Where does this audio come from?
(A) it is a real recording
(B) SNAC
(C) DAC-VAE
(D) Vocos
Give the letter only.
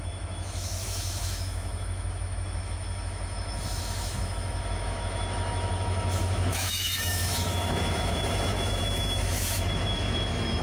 C